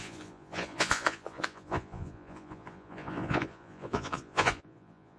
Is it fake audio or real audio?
fake